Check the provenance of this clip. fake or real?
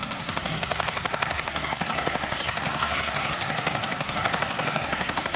fake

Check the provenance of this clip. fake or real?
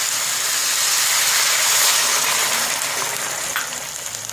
real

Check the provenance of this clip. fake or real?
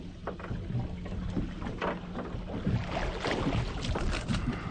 real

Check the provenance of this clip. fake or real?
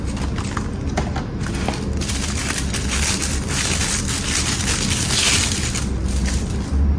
real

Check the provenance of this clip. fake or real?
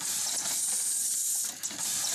real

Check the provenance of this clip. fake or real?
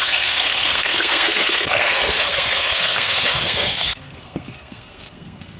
fake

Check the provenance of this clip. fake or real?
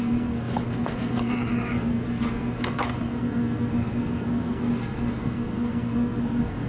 fake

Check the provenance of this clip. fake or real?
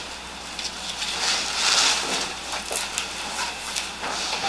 real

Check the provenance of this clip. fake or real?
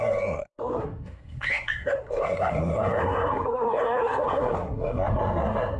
fake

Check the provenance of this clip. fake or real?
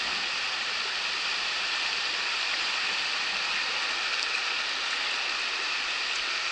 real